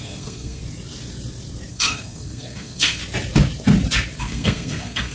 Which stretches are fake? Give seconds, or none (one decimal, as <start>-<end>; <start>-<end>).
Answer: 0.0-0.6; 1.7-3.0; 4.2-5.1